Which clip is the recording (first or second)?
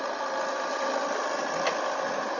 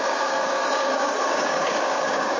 first